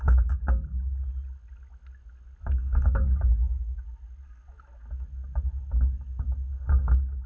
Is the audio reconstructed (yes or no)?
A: no